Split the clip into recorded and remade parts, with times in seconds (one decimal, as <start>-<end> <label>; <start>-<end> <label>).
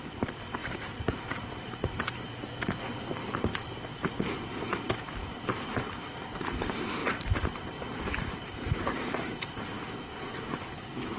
0.0-0.6 recorded; 0.6-2.3 remade; 2.3-7.0 recorded; 7.0-9.6 remade; 9.6-11.2 recorded